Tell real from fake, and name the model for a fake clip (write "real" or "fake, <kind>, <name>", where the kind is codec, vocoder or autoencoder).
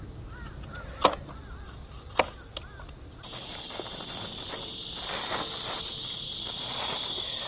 real